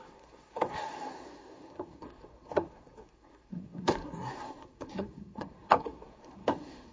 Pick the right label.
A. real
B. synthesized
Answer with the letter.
B